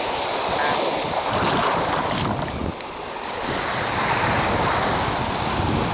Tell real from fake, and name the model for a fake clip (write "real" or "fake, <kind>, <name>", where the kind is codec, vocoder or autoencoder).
real